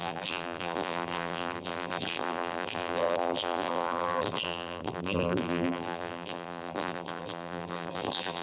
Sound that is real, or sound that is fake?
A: fake